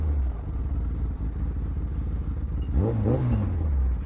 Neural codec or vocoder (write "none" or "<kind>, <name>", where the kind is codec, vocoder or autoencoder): none